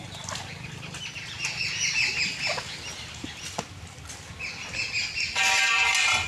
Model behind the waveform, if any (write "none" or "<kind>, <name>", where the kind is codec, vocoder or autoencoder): none